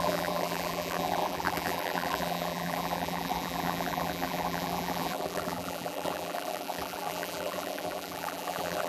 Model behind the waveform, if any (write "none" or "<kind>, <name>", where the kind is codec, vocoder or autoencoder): vocoder, BigVGAN v2